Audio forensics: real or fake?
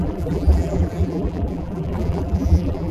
fake